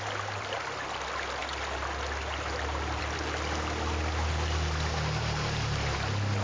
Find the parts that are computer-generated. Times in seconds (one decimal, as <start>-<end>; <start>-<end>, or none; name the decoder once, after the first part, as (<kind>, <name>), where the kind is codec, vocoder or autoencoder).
none